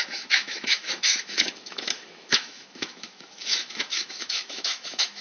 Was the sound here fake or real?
fake